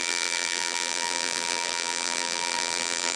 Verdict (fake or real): fake